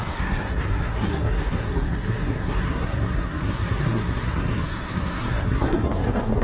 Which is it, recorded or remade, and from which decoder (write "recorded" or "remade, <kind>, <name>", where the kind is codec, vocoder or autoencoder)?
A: remade, codec, SNAC